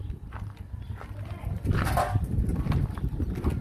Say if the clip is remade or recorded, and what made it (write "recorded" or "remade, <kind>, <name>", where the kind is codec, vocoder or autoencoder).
remade, vocoder, BigVGAN v2